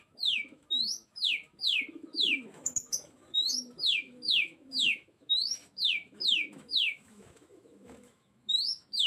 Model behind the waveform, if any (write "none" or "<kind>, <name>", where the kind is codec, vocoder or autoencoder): autoencoder, DAC-VAE